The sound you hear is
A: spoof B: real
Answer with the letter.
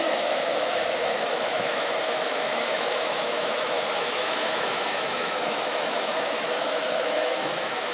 A